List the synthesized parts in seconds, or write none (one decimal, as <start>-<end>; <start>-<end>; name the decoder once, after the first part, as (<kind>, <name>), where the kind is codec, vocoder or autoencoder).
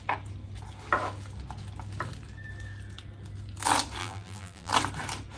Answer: 4.0-4.7 (vocoder, BigVGAN v2)